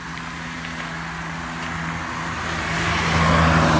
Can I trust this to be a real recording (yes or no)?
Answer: yes